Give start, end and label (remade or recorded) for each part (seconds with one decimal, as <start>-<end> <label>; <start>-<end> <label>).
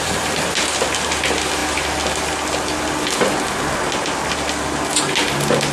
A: 0.0-5.7 recorded